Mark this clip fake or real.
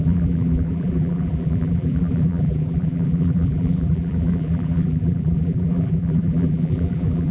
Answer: fake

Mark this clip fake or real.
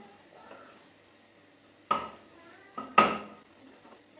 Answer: real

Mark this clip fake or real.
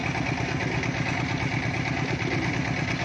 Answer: real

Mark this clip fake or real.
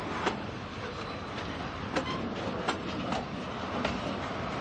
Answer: fake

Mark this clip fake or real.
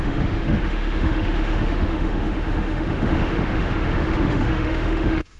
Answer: fake